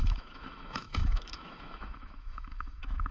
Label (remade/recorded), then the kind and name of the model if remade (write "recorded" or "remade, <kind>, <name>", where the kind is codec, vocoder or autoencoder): remade, autoencoder, DAC-VAE